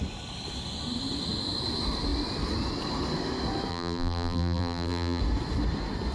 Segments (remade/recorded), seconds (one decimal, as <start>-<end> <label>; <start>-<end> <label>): 0.0-3.7 recorded; 3.7-5.2 remade; 5.2-6.1 recorded